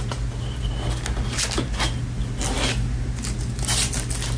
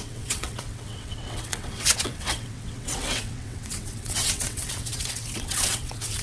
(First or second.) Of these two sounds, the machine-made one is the second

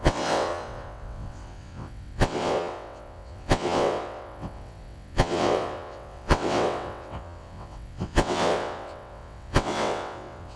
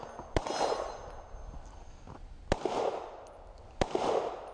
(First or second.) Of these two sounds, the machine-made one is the first